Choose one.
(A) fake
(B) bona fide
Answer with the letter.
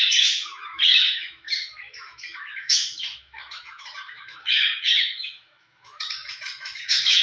A